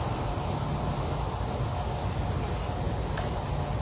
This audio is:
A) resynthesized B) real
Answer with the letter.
B